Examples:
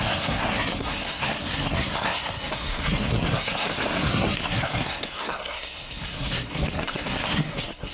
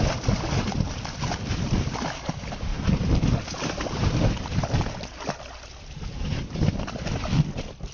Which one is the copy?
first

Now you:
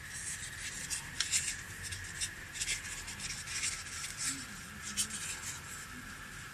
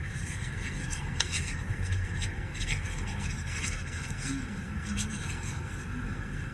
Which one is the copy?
second